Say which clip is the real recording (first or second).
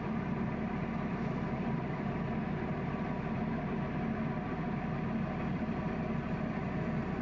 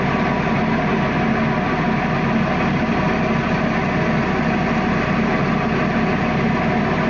second